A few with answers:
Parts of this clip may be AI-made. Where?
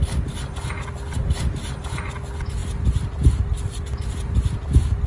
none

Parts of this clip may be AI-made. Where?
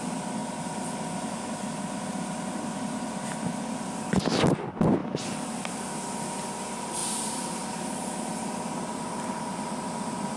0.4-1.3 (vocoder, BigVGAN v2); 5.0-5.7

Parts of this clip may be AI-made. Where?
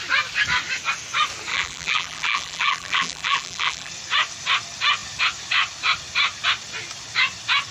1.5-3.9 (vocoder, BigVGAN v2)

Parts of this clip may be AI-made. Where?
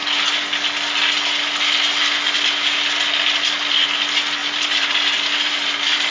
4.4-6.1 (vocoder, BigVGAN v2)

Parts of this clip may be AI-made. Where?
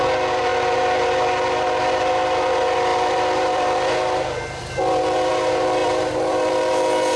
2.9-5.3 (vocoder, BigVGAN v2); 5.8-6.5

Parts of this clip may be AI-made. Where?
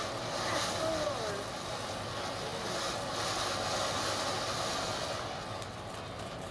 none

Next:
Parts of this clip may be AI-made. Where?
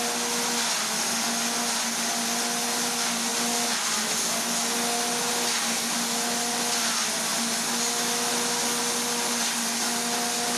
none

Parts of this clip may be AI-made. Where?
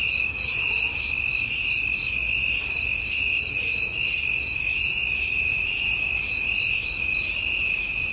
4.7-6.3 (vocoder, BigVGAN v2)